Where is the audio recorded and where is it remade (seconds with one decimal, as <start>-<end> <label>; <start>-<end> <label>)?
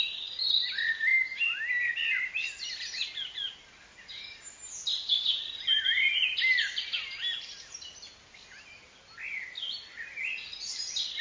0.0-4.9 recorded; 4.9-5.4 remade; 5.4-11.2 recorded